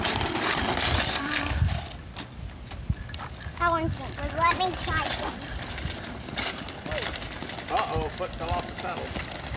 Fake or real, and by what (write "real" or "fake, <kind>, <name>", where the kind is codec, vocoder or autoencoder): real